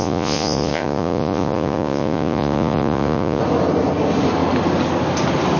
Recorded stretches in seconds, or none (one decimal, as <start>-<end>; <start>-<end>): 3.4-5.6